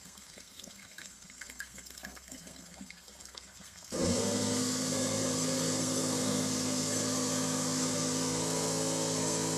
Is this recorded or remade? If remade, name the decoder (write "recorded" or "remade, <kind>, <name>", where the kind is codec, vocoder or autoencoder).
remade, codec, SNAC